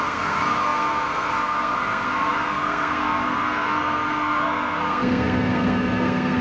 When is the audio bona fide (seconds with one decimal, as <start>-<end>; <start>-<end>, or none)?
none

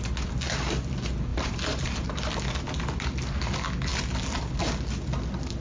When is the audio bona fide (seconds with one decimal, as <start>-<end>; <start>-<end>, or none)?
0.0-1.3; 2.2-5.6